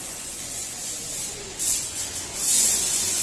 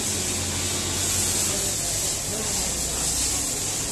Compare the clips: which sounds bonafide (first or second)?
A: second